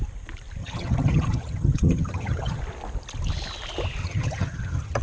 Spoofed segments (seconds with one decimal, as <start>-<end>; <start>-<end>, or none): 0.6-2.6; 4.0-5.0